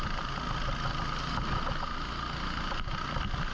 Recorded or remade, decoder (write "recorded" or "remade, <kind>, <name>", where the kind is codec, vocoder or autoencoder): recorded